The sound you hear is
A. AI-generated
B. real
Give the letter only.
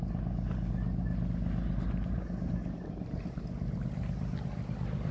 A